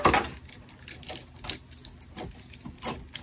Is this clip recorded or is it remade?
recorded